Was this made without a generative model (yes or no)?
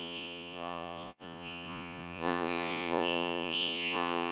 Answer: no